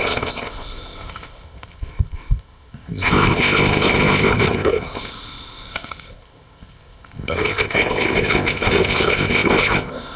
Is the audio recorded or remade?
remade